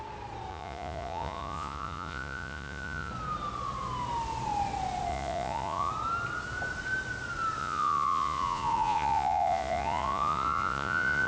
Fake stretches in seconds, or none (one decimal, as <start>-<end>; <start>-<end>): 0.5-3.1; 5.1-5.9; 7.6-11.3